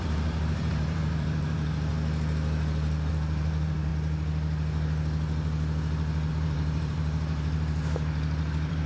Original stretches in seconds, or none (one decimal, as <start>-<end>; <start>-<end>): 1.9-3.1; 3.9-6.3